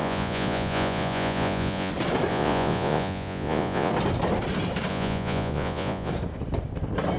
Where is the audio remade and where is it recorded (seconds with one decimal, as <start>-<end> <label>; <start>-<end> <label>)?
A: 0.0-1.9 remade; 1.9-2.3 recorded; 2.3-3.9 remade; 3.9-4.9 recorded; 4.9-6.1 remade; 6.1-7.2 recorded